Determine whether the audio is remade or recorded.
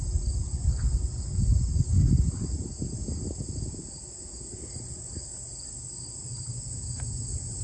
recorded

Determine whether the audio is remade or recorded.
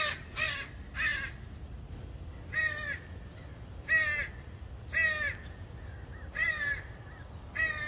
recorded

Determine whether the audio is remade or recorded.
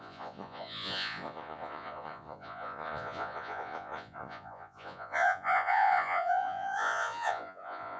remade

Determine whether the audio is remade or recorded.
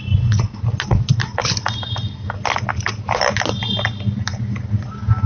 recorded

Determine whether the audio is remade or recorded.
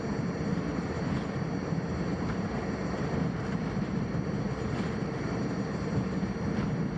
remade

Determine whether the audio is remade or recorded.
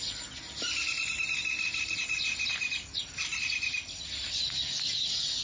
recorded